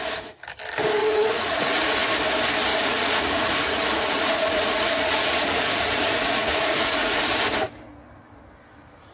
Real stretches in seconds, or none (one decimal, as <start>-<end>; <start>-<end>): 0.0-1.0; 2.1-2.7; 7.2-9.1